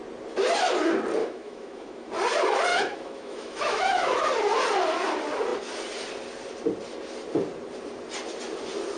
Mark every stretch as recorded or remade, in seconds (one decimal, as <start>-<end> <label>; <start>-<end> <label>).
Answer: 0.0-1.2 recorded; 1.2-2.1 remade; 2.1-2.7 recorded; 2.7-4.3 remade; 4.3-9.0 recorded